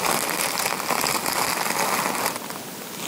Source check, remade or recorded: recorded